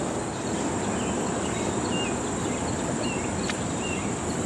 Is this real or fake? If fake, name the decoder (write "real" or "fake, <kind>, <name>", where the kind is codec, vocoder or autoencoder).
real